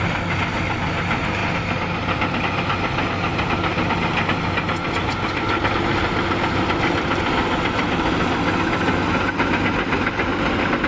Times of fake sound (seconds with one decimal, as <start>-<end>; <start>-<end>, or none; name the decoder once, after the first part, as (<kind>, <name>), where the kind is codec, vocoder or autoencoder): none